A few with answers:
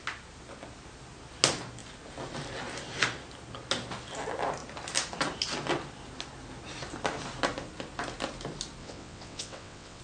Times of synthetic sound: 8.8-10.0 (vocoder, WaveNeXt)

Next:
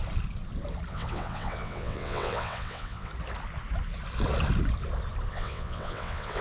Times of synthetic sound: 0.9-3.1 (vocoder, WaveNeXt); 5.3-6.4

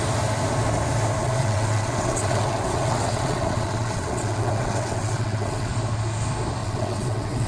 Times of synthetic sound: 1.2-5.7 (vocoder, WaveNeXt); 6.6-7.5

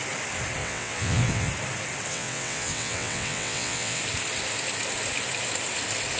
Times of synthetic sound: 0.6-1.5 (vocoder, WaveNeXt); 2.1-4.0

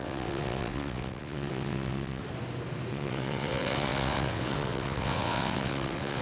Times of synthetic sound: 0.0-2.2 (vocoder, WaveNeXt); 2.9-6.2

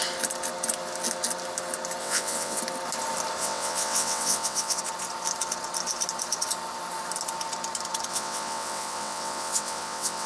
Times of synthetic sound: 2.0-2.6 (vocoder, WaveNeXt); 3.4-4.8; 8.1-10.3

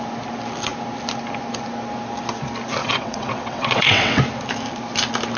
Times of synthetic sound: 2.8-4.2 (vocoder, WaveNeXt)

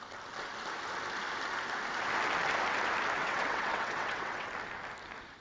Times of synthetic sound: 3.2-4.5 (vocoder, WaveNeXt)